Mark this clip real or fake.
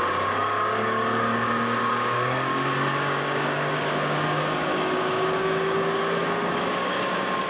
fake